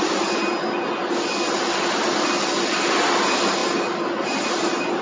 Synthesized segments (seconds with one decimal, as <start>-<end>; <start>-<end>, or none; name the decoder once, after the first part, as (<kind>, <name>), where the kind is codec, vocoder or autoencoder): none